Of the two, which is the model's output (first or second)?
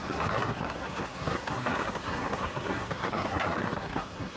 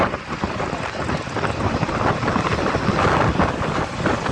first